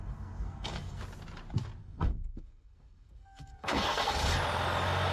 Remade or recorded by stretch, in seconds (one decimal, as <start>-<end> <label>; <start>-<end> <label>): 0.0-1.0 remade; 1.0-1.8 recorded; 1.8-4.1 remade; 4.1-5.1 recorded